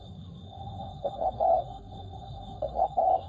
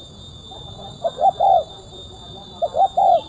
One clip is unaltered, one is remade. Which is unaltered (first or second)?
second